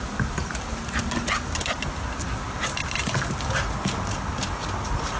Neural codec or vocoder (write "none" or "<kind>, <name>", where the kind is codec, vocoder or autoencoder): none